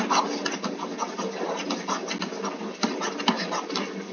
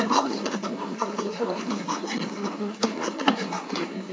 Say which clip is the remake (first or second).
second